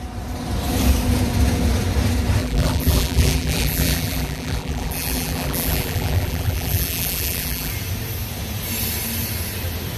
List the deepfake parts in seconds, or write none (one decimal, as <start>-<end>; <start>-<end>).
2.4-7.7

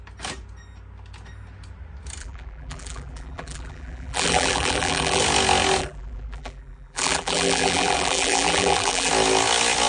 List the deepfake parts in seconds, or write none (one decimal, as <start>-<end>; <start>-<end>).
2.2-5.2; 5.8-9.1